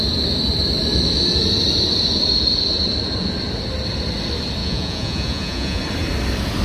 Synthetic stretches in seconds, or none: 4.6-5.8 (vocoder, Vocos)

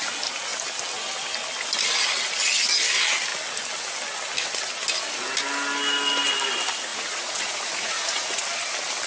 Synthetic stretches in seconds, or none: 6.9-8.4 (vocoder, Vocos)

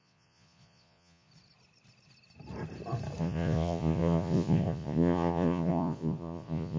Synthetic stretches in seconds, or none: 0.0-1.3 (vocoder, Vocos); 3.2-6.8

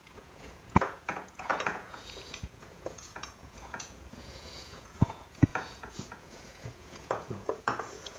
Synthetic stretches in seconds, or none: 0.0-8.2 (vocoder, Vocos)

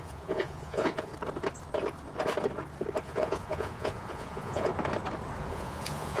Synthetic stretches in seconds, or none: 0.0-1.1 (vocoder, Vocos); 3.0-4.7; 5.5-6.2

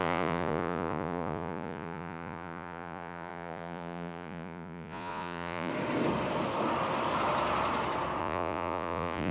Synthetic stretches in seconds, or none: 0.0-5.7 (vocoder, Vocos); 8.2-9.3